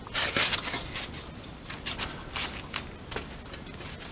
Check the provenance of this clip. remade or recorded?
recorded